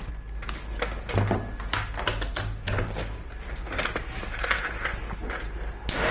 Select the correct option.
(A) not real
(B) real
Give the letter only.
B